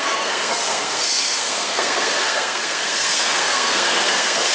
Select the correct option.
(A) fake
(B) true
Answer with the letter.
A